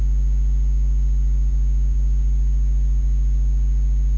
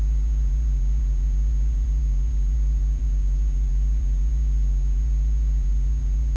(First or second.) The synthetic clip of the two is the second